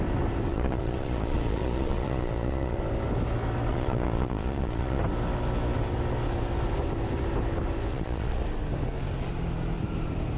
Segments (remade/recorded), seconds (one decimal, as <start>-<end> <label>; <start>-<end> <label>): 0.0-0.5 recorded; 0.5-2.8 remade; 2.8-3.7 recorded; 3.7-5.0 remade; 5.0-7.9 recorded; 7.9-8.4 remade; 8.4-10.4 recorded